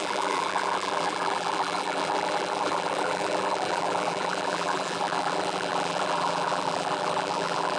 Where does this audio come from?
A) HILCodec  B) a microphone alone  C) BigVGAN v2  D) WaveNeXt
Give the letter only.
C